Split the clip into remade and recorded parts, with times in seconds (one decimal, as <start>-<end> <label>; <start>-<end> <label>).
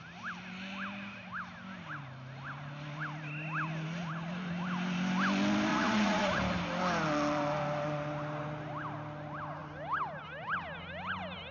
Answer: 0.0-5.7 recorded; 5.7-6.4 remade; 6.4-11.5 recorded